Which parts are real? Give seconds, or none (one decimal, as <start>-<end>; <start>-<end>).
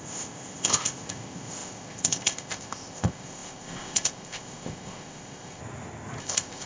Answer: 5.6-6.2